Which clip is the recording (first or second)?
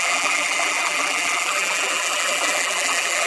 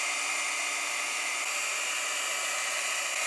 second